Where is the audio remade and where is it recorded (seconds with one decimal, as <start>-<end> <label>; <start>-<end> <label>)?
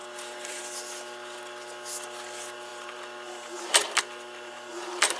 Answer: 0.0-0.6 remade; 0.6-2.7 recorded; 2.7-4.0 remade; 4.0-5.2 recorded